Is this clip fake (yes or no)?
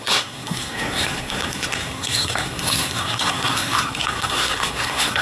yes